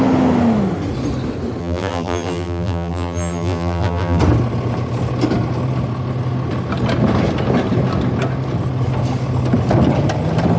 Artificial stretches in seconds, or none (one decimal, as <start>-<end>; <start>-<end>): 1.6-4.2